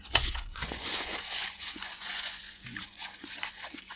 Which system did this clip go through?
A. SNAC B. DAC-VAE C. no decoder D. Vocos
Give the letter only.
D